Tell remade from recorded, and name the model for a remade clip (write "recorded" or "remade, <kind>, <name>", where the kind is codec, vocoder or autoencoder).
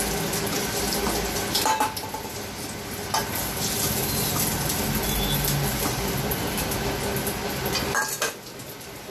recorded